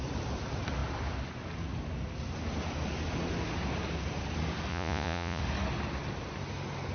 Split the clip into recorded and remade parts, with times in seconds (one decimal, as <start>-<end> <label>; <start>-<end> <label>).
0.0-4.7 recorded; 4.7-5.4 remade; 5.4-6.9 recorded